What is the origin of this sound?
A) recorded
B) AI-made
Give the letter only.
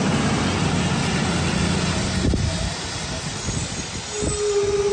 A